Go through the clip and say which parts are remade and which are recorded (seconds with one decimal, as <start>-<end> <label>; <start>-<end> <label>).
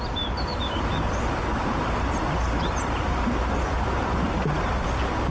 0.0-5.3 recorded